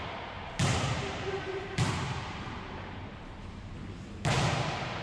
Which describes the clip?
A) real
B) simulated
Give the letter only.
B